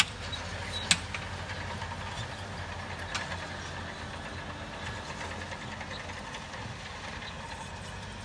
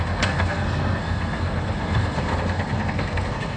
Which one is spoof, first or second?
second